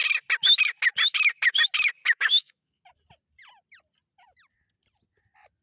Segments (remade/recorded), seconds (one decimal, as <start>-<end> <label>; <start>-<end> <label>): 0.0-2.0 recorded; 2.0-2.9 remade; 2.9-5.6 recorded